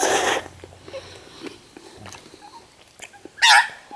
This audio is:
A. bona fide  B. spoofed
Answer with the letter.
A